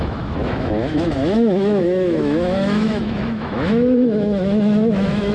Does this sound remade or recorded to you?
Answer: remade